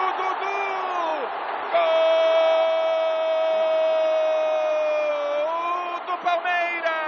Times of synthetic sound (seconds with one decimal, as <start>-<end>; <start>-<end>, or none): none